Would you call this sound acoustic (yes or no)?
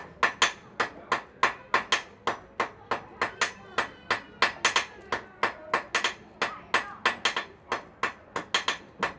yes